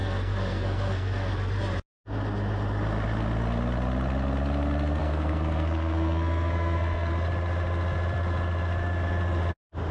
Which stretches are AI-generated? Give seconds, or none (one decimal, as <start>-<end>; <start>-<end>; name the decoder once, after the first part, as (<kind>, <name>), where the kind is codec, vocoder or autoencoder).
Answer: 0.0-1.3 (codec, SNAC); 5.0-7.1